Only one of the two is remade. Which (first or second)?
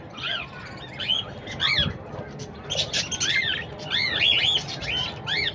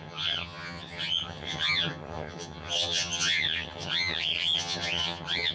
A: second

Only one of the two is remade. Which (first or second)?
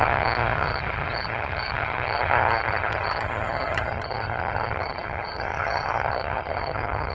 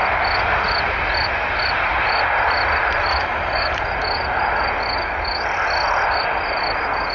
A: first